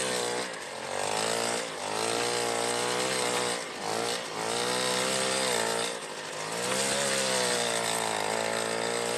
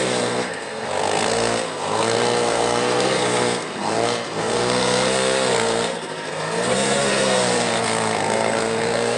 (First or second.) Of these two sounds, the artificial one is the second